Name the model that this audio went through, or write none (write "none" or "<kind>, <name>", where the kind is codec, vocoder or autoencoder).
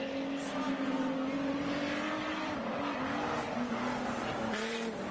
none